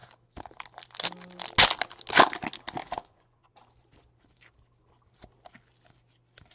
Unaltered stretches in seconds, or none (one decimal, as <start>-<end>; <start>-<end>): 0.0-2.8; 3.7-6.5